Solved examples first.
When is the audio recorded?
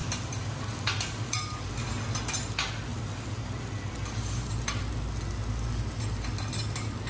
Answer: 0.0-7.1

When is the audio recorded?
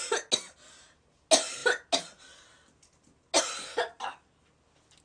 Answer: 0.0-5.0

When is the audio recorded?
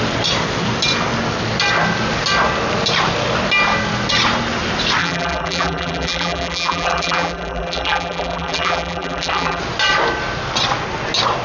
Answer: 0.0-5.0; 9.6-11.4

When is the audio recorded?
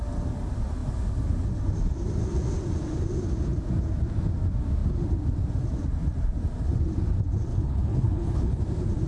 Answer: 0.0-7.5; 8.6-9.1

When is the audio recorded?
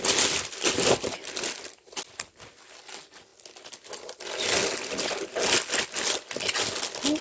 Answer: 0.0-7.2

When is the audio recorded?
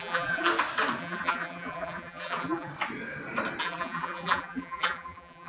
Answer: 0.5-1.0; 2.7-3.6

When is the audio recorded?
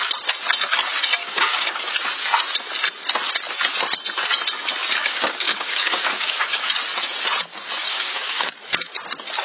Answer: 0.0-1.2; 1.8-5.0; 6.7-7.9; 8.5-9.4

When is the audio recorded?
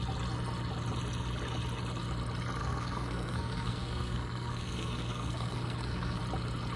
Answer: 0.0-2.6; 6.2-6.8